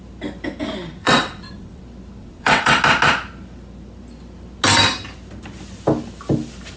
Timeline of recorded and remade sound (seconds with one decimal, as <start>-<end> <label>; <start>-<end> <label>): 0.0-1.0 recorded; 1.0-1.8 remade; 1.8-2.2 recorded; 2.2-2.8 remade; 2.8-6.8 recorded